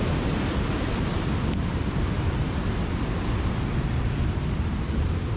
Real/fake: real